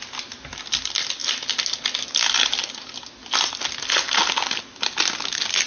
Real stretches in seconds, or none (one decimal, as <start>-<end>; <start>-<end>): 0.0-5.7